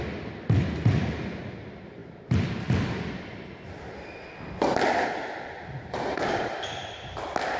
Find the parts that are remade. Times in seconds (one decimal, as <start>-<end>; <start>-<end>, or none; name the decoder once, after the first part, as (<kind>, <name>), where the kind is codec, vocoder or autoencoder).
none